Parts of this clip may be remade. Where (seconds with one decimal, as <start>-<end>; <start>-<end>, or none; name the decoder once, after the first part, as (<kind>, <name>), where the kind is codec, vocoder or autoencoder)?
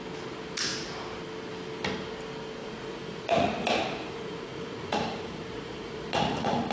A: 2.6-6.7 (vocoder, Vocos)